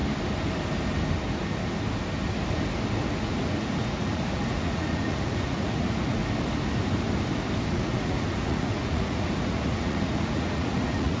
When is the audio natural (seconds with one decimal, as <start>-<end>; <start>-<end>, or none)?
0.0-3.1; 6.2-7.6